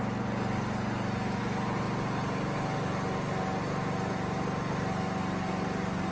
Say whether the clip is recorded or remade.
recorded